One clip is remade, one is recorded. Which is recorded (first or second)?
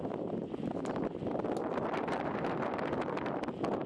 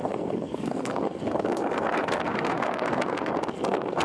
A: first